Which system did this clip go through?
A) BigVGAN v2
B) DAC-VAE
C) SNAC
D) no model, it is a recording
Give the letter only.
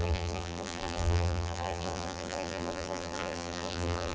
A